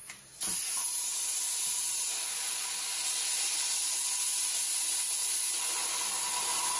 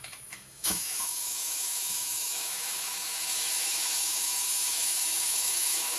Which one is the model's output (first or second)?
second